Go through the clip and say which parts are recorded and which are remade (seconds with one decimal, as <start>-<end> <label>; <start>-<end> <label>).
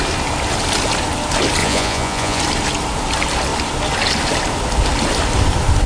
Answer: 0.0-1.6 recorded; 1.6-2.4 remade; 2.4-5.9 recorded